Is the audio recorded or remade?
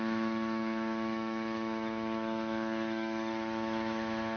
remade